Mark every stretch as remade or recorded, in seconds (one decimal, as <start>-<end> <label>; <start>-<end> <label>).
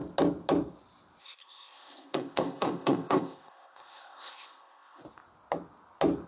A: 0.0-1.2 recorded; 1.2-5.0 remade; 5.0-6.3 recorded